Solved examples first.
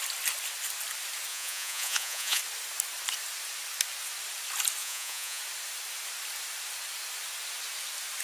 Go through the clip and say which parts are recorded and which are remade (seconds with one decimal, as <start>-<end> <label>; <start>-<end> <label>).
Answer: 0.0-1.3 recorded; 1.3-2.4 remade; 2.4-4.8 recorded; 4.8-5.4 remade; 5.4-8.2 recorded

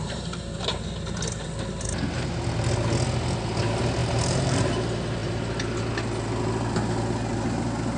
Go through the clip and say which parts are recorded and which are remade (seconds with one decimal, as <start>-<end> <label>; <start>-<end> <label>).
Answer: 0.0-1.2 remade; 1.2-4.0 recorded; 4.0-4.7 remade; 4.7-8.0 recorded

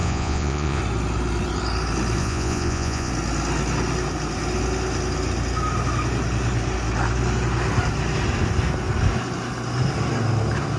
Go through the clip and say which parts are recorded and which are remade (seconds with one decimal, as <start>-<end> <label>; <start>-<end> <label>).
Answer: 0.0-0.8 remade; 0.8-2.2 recorded; 2.2-3.1 remade; 3.1-10.8 recorded

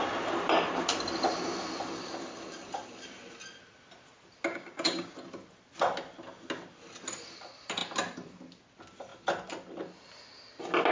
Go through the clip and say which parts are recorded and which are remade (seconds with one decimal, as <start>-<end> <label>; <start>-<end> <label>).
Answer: 0.0-4.5 recorded; 4.5-5.1 remade; 5.1-10.9 recorded